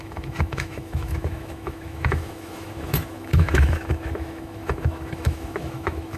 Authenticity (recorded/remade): remade